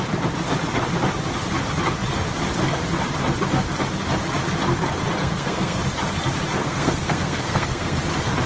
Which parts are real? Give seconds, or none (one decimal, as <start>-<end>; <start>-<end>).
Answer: 0.0-5.2; 5.8-6.6; 8.0-8.5